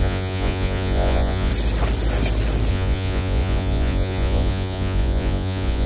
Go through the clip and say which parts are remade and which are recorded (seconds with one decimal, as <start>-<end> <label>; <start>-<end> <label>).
0.0-1.5 remade; 1.5-2.7 recorded; 2.7-5.9 remade